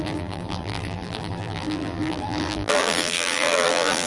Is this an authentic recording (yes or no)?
no